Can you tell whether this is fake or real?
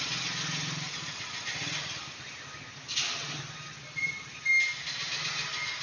real